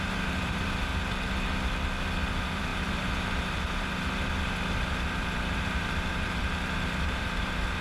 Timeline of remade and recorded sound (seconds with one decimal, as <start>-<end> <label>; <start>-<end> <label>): 0.0-0.9 remade; 0.9-2.3 recorded; 2.3-7.8 remade